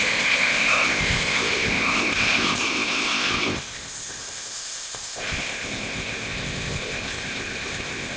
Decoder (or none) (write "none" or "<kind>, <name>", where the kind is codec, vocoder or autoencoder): codec, ZipCodec